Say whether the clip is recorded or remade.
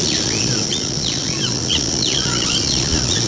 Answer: remade